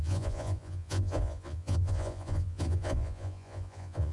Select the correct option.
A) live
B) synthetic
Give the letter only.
B